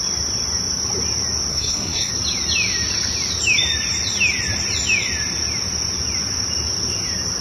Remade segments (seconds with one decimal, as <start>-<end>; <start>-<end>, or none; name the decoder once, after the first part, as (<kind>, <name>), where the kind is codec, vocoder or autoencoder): 1.5-2.1 (codec, SNAC)